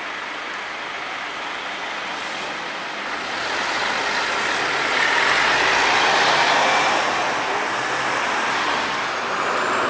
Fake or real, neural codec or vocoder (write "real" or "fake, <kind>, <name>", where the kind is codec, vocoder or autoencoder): real